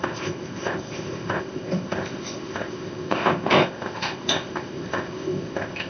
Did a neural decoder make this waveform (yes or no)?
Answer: yes